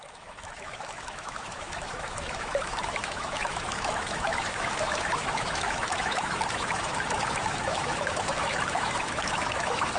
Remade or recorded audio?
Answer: remade